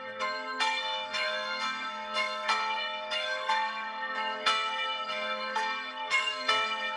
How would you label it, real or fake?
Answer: fake